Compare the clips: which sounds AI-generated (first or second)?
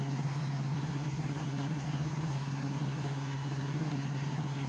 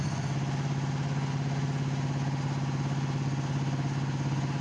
first